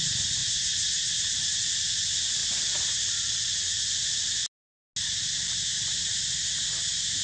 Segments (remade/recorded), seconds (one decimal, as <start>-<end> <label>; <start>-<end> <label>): 0.0-7.2 recorded